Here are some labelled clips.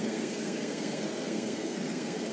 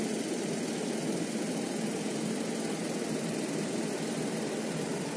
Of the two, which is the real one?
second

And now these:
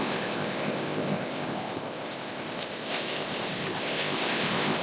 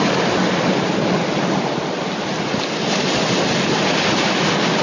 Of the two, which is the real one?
second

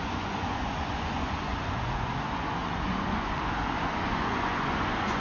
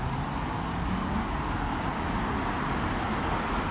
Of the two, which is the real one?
second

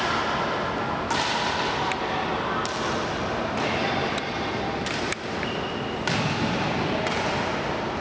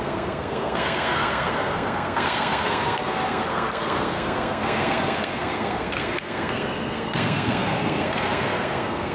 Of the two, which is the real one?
first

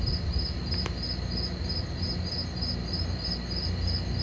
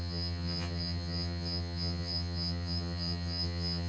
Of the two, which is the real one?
first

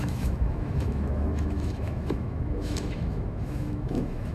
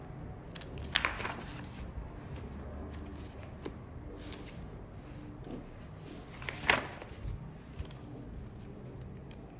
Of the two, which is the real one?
second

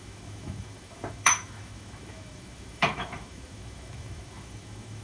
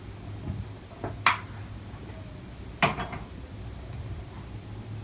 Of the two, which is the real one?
second